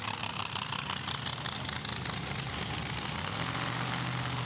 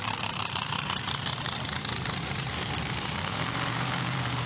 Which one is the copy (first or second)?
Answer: second